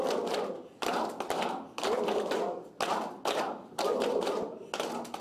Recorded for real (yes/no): yes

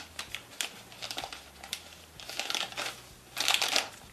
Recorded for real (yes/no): yes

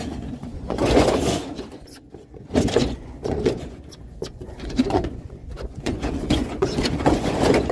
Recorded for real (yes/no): no